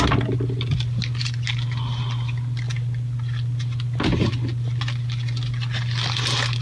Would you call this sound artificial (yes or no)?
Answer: no